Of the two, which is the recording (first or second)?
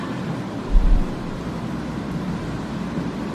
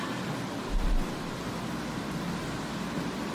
second